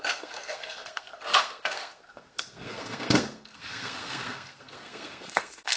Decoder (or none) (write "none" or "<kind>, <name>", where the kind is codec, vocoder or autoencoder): codec, SNAC